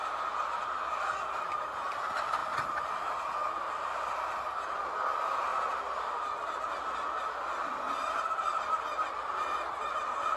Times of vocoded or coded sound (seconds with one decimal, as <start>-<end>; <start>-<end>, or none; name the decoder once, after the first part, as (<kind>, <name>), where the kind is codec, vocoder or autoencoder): none